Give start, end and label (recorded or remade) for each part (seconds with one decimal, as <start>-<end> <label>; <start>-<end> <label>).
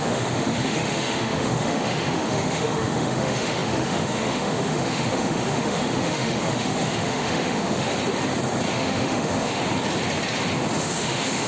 0.0-7.9 remade; 7.9-8.7 recorded; 8.7-9.6 remade; 9.6-10.8 recorded; 10.8-11.5 remade